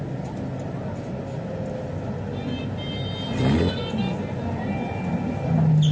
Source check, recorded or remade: recorded